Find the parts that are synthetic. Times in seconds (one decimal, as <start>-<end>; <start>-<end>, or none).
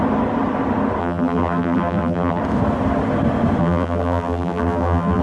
1.0-2.4; 3.6-5.2